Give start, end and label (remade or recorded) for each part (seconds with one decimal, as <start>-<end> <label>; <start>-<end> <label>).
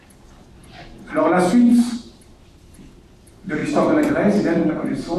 0.0-5.2 recorded